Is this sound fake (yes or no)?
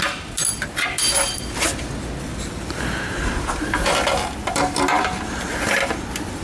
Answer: no